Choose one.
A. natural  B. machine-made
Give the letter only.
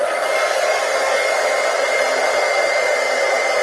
A